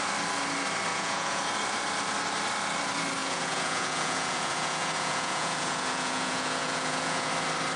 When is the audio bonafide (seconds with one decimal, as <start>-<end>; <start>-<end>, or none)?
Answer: 0.0-0.9; 1.4-3.2; 7.3-7.8